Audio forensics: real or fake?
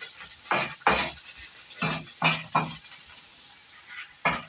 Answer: real